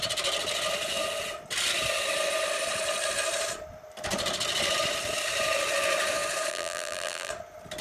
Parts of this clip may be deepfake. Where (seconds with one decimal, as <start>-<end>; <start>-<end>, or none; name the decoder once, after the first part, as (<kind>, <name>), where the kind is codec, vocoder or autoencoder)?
6.5-7.3 (vocoder, BigVGAN v2)